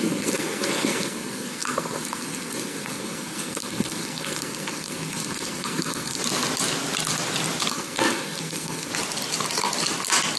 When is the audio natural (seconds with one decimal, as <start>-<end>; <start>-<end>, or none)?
6.2-7.7; 8.9-10.4